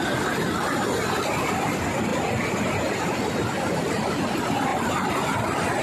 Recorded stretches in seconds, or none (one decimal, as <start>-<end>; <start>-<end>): 0.0-2.1; 2.6-5.8

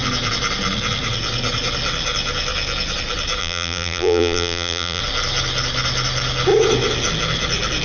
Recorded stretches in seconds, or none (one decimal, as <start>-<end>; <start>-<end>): 0.0-3.4; 5.0-7.8